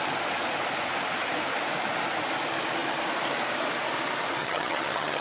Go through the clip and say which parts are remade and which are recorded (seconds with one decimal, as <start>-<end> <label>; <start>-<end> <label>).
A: 0.0-4.4 recorded; 4.4-5.2 remade